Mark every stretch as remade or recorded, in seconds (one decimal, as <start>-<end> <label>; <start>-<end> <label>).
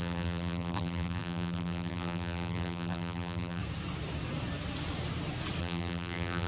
0.0-3.6 remade; 3.6-5.6 recorded; 5.6-6.5 remade